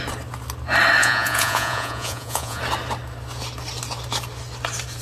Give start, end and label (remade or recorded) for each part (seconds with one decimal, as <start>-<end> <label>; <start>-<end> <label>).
0.0-1.0 recorded; 1.0-2.6 remade; 2.6-5.0 recorded